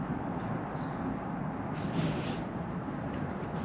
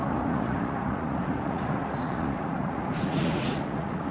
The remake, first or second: second